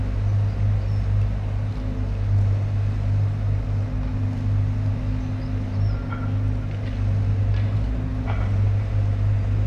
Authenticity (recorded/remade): recorded